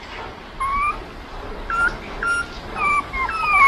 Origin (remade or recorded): recorded